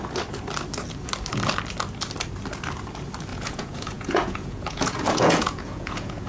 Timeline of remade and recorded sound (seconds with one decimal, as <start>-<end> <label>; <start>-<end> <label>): 0.0-3.3 recorded; 3.3-6.3 remade